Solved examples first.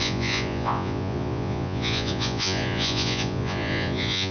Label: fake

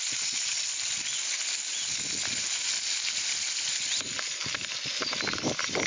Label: real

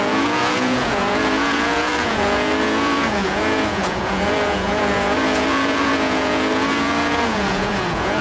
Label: fake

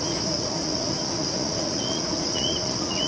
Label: fake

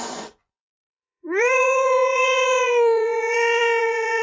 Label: fake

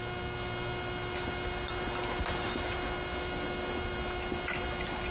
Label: real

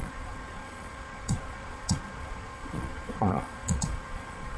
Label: fake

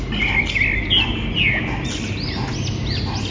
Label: real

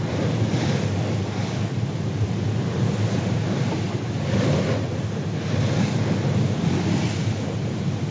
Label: real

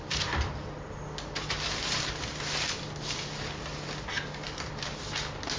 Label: real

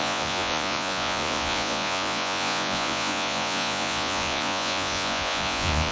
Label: fake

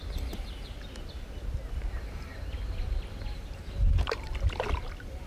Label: real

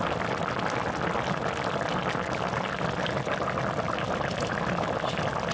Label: real